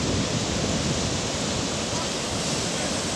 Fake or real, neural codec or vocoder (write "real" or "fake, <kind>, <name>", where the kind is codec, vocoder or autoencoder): real